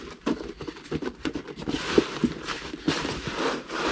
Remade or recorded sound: recorded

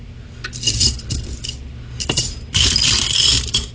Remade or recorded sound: recorded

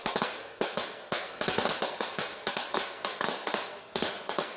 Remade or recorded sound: remade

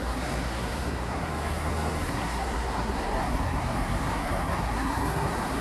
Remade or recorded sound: remade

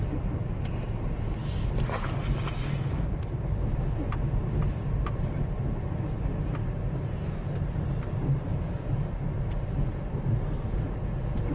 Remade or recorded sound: recorded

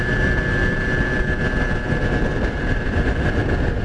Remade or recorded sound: recorded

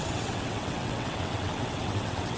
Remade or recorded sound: remade